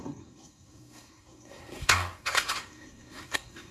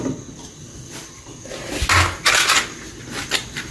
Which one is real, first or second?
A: second